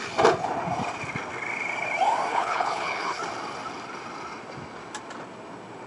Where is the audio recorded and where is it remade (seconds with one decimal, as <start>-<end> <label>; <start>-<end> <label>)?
0.0-2.3 recorded; 2.3-3.2 remade; 3.2-5.9 recorded